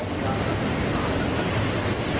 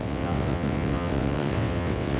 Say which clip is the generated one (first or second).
second